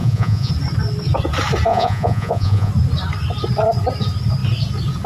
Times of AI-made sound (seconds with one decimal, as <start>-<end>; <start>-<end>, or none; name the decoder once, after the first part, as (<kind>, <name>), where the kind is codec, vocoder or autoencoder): 0.0-0.5 (vocoder, Vocos); 1.7-2.7